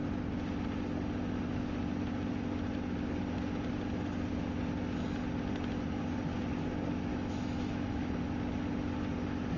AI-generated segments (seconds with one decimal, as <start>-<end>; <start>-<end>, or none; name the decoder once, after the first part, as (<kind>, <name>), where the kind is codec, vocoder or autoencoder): 7.1-8.1 (autoencoder, DAC-VAE)